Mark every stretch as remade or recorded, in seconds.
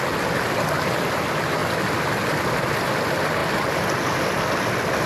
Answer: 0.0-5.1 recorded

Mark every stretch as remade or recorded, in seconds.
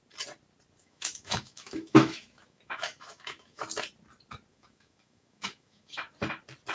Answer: 0.0-0.8 recorded; 0.8-3.6 remade; 3.6-4.5 recorded; 4.5-6.1 remade; 6.1-6.7 recorded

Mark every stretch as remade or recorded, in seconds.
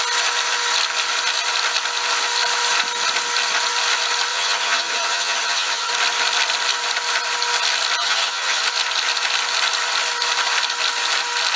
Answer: 0.0-4.3 recorded; 4.3-5.9 remade; 5.9-8.0 recorded; 8.0-8.6 remade; 8.6-11.6 recorded